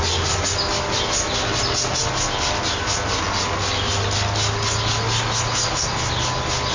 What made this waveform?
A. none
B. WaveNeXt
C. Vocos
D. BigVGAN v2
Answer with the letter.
A